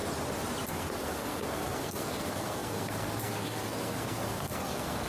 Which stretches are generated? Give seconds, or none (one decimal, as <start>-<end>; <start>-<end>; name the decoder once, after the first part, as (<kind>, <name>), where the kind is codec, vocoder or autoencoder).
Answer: 0.7-5.1 (codec, SNAC)

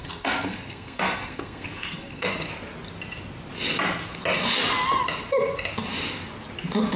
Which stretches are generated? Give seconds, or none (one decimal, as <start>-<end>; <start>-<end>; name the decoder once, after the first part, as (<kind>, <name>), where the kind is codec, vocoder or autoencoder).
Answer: 0.0-2.3 (codec, SNAC)